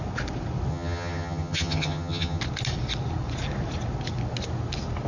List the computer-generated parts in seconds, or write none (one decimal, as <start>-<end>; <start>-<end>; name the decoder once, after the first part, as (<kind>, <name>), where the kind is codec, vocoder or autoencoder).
0.7-2.4 (vocoder, HiFi-GAN)